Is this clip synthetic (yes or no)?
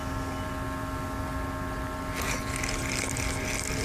no